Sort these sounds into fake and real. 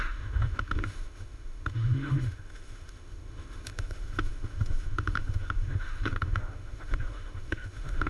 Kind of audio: fake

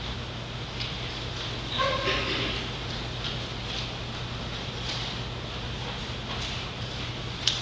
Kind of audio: real